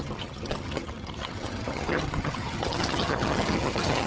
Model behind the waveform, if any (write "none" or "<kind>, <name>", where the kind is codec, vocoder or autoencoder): vocoder, HiFi-GAN